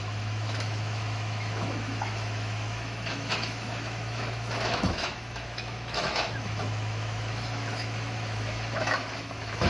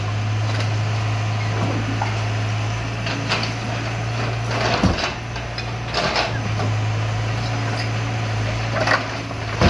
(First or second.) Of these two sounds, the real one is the second